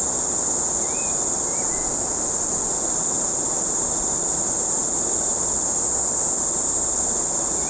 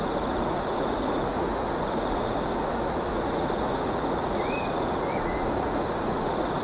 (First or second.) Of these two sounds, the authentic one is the first